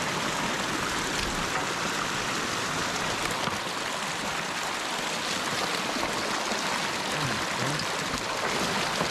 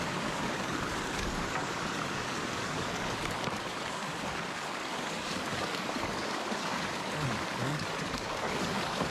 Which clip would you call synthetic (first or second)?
second